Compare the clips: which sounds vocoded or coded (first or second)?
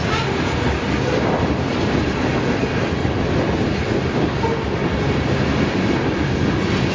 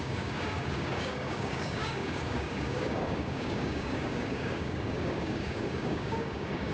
second